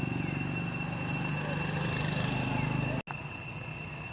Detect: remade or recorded recorded